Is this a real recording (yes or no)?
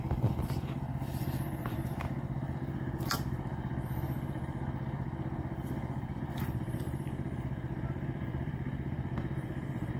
no